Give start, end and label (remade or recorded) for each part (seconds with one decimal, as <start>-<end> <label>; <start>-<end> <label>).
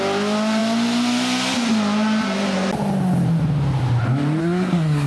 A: 0.0-4.4 recorded; 4.4-5.1 remade